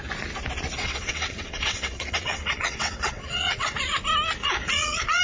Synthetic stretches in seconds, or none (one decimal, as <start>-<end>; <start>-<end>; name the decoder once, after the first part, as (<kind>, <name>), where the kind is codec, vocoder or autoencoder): 0.7-3.8 (vocoder, WaveNeXt); 4.4-5.2